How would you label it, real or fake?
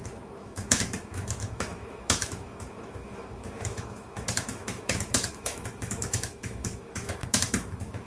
fake